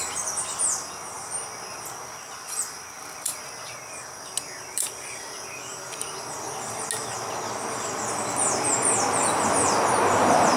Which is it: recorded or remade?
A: recorded